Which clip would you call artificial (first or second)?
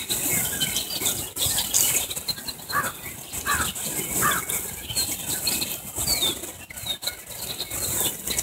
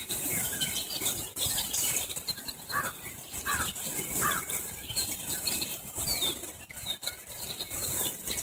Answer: second